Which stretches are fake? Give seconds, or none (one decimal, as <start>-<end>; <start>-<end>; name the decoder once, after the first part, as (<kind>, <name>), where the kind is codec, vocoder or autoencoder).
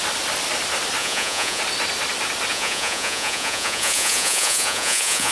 1.0-1.6 (vocoder, Vocos); 2.5-5.3